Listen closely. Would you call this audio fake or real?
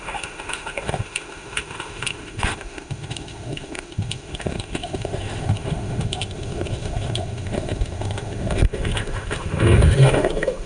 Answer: fake